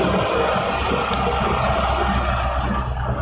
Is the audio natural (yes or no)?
yes